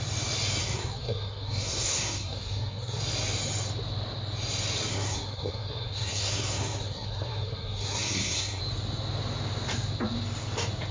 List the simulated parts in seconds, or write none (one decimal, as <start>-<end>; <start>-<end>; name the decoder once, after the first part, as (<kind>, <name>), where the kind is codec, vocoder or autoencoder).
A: 0.6-3.0 (codec, SNAC); 4.9-8.6

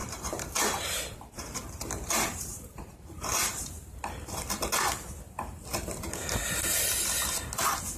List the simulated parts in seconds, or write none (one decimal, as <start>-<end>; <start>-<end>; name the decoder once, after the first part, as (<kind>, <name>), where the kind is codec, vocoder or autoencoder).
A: 0.0-4.4 (vocoder, BigVGAN v2)